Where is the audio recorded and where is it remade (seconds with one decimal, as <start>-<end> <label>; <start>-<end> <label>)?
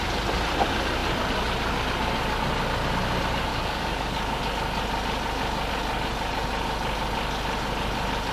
0.0-3.5 recorded; 3.5-4.4 remade; 4.4-8.3 recorded